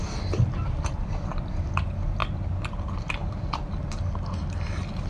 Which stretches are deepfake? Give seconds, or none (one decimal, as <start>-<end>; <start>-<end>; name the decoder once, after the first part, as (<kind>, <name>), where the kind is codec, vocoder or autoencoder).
0.0-1.2 (vocoder, BigVGAN v2); 3.2-3.8

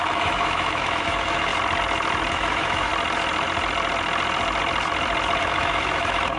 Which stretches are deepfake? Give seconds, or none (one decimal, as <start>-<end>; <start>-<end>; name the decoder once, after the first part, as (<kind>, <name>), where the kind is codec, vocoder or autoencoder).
0.0-1.5 (autoencoder, DAC-VAE); 2.3-2.9; 5.4-6.4

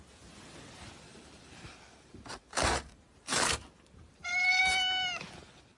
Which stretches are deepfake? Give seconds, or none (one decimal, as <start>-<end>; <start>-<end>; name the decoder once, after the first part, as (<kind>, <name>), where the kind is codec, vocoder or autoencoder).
1.1-4.6 (vocoder, BigVGAN v2)